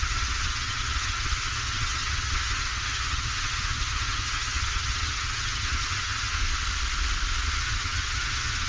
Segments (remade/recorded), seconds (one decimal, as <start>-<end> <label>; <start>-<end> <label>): 0.0-6.4 remade; 6.4-7.6 recorded; 7.6-8.7 remade